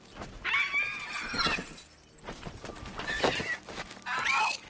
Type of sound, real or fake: real